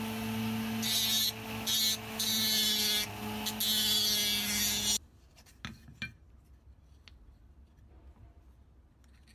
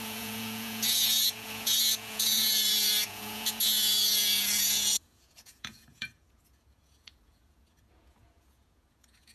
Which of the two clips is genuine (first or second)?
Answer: first